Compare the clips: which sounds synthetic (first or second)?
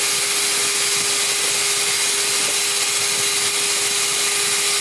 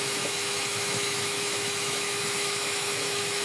second